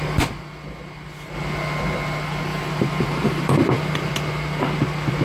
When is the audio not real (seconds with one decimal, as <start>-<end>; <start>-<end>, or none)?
2.5-4.1